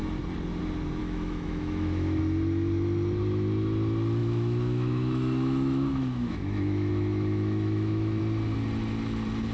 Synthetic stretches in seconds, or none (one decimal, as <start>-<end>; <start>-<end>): 1.0-2.2; 4.2-8.2